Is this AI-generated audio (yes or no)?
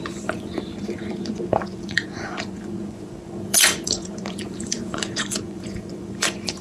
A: yes